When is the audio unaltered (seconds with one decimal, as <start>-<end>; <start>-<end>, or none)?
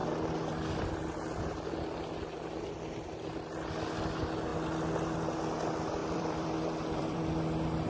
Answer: 0.0-6.0; 7.2-7.9